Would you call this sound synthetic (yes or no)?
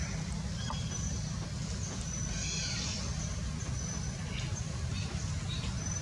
no